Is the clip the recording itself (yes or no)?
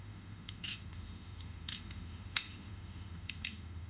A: no